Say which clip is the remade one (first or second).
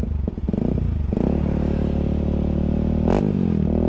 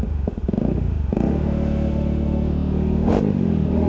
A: second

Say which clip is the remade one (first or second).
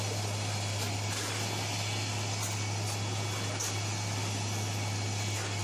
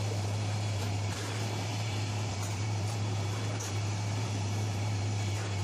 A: second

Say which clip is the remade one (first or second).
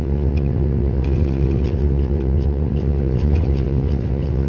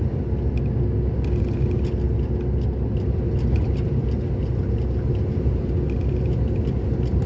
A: first